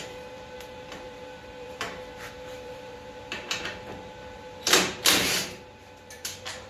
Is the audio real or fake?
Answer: fake